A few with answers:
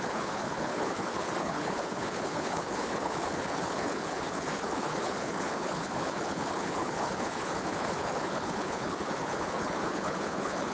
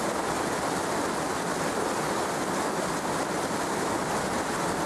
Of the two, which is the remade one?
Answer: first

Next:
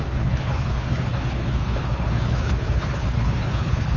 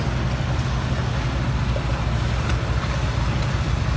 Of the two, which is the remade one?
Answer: first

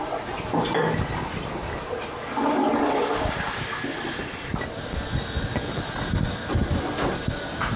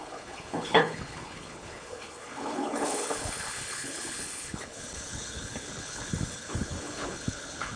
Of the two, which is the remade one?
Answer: second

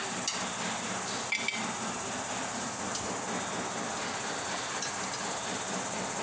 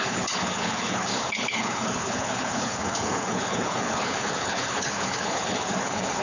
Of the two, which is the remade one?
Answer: second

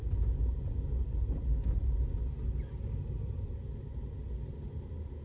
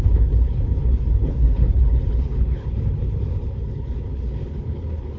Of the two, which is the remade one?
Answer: second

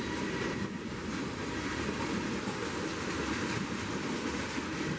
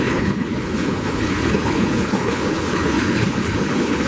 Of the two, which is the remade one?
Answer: second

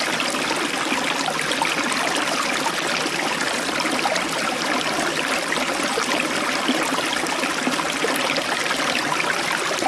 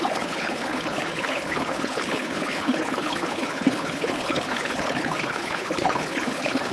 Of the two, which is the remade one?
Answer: second